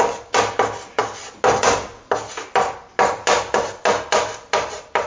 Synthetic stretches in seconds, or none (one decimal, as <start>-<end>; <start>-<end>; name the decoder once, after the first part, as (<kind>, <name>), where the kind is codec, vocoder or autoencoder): none